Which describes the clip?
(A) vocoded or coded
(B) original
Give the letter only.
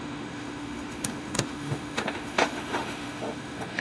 A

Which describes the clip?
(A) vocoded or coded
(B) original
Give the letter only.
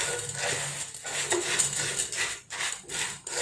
B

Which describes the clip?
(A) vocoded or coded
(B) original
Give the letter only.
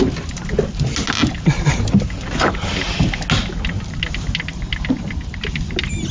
B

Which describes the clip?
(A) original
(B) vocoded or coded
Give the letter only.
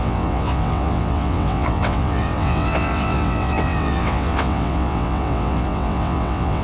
B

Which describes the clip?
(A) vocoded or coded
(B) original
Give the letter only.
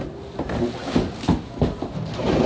B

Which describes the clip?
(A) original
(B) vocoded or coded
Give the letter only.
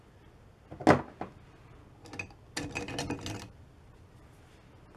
A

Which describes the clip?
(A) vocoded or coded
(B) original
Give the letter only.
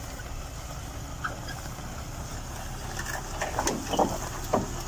B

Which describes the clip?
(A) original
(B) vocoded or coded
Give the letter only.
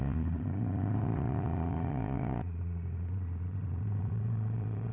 B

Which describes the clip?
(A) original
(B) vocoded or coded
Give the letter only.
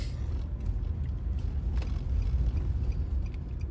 A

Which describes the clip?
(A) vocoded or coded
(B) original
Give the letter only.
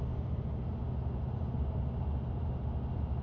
B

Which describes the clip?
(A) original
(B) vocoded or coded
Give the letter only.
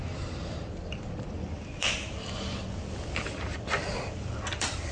A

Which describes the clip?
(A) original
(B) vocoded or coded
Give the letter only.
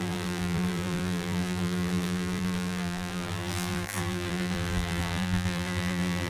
B